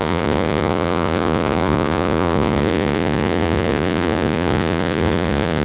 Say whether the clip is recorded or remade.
remade